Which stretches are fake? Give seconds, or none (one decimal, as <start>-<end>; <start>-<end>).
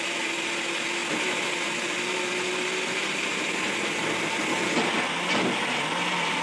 none